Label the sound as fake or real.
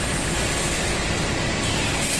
real